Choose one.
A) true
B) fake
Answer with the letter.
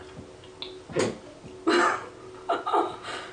A